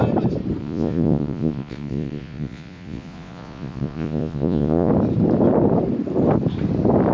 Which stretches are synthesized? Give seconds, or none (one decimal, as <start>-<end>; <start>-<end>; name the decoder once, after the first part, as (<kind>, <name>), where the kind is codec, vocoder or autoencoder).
0.6-4.9 (vocoder, Vocos)